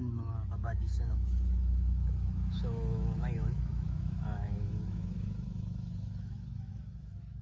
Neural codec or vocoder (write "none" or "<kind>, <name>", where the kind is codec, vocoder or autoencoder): autoencoder, DAC-VAE